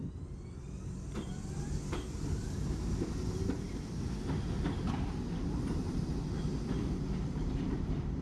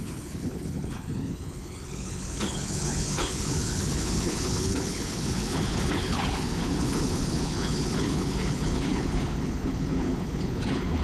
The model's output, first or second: second